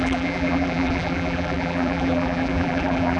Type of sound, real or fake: fake